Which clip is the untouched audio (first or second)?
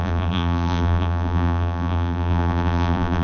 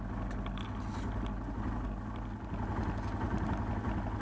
second